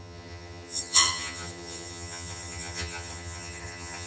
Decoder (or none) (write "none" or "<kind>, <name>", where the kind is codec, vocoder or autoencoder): vocoder, HiFi-GAN